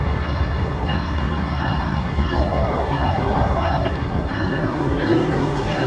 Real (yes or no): no